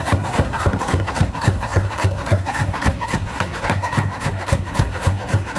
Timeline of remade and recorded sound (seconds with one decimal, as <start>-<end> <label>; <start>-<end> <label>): 0.0-5.6 remade